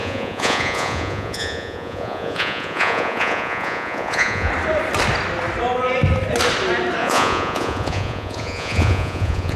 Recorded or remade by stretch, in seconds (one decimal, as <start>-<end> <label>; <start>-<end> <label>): 0.0-4.5 remade; 4.5-7.0 recorded; 7.0-9.6 remade